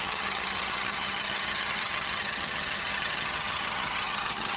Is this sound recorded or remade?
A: remade